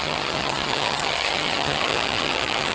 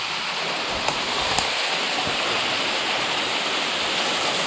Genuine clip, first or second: second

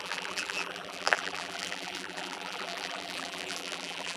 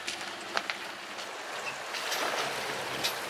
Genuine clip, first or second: second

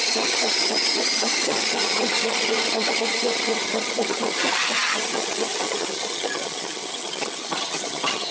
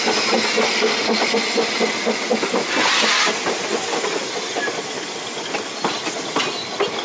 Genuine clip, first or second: second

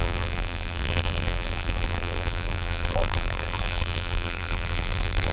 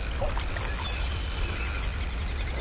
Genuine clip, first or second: second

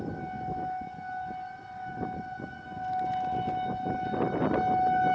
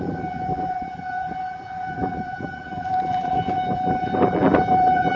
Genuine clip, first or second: first